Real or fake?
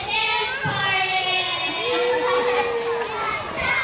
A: real